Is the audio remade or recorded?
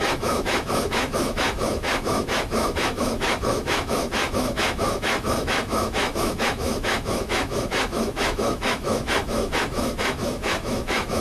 remade